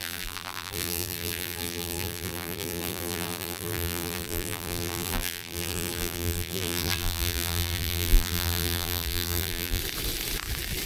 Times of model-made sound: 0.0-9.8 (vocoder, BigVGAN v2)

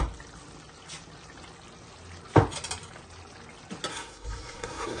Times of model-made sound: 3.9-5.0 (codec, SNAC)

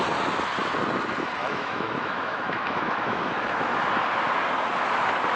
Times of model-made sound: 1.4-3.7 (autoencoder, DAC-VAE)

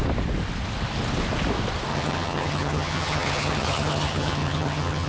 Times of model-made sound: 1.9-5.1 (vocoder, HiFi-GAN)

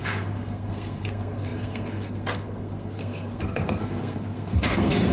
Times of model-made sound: 0.0-5.1 (codec, SNAC)

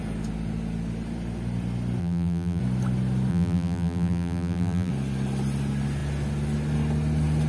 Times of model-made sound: 2.0-2.6 (vocoder, BigVGAN v2); 3.3-4.9

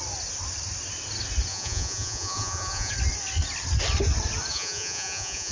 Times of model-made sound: 1.5-2.9 (vocoder, Vocos); 4.5-5.5

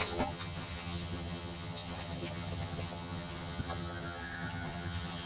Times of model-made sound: 0.0-5.3 (vocoder, HiFi-GAN)